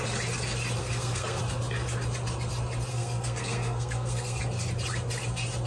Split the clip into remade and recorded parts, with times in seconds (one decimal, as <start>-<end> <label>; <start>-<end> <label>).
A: 0.0-0.8 recorded; 0.8-1.4 remade; 1.4-2.9 recorded; 2.9-4.4 remade; 4.4-5.7 recorded